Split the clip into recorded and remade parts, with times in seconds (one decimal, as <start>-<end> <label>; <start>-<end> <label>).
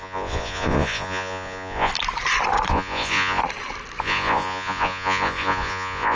0.0-1.9 remade; 1.9-2.7 recorded; 2.7-3.4 remade; 3.4-4.0 recorded; 4.0-6.2 remade